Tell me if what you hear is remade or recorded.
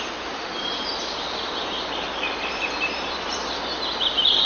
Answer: remade